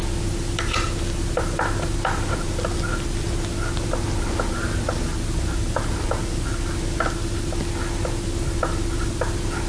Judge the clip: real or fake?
real